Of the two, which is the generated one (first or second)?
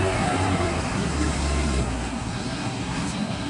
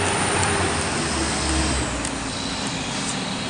first